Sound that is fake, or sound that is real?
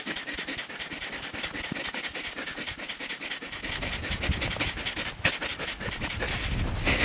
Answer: real